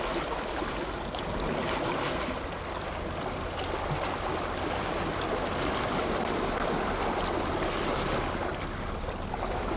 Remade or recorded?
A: recorded